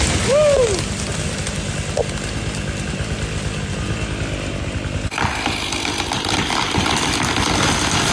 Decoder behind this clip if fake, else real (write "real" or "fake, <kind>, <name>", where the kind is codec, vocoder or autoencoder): real